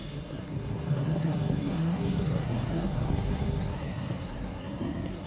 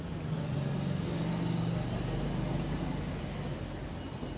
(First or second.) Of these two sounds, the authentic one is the second